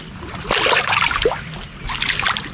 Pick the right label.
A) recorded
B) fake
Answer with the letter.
A